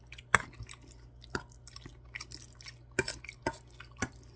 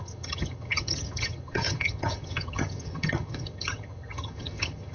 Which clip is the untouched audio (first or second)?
first